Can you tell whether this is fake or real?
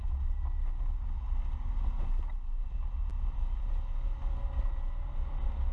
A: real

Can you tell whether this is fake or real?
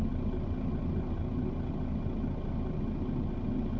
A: real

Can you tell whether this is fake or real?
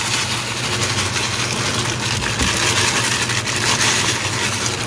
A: real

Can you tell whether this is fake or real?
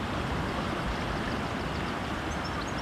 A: real